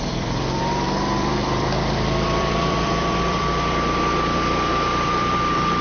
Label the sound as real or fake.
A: fake